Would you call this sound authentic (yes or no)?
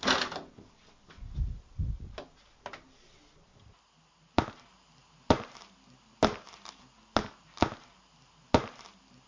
yes